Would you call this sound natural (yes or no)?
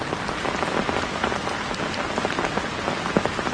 yes